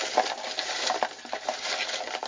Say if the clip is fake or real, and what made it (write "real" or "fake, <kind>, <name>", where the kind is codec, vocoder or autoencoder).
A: real